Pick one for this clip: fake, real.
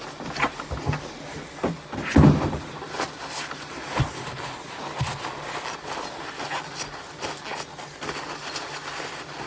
real